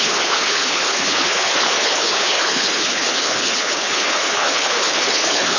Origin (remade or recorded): remade